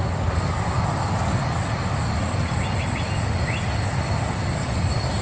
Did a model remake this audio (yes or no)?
no